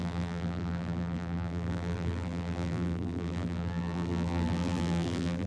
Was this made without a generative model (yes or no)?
no